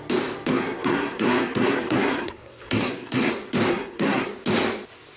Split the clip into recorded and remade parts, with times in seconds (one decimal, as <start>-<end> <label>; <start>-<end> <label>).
0.0-0.5 recorded; 0.5-3.3 remade; 3.3-3.7 recorded; 3.7-4.3 remade; 4.3-5.2 recorded